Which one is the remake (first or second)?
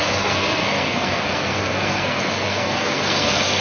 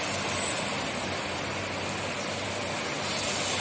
first